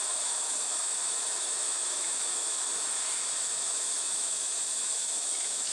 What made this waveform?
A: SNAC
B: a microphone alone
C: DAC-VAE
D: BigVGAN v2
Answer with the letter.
C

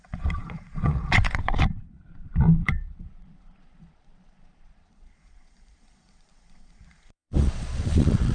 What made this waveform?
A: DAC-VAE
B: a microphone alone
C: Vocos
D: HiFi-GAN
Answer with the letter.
C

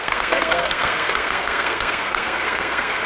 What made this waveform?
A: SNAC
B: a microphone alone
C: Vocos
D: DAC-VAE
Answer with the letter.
A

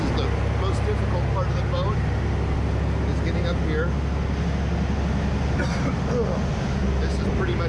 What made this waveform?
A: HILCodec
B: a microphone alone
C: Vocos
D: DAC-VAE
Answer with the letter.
B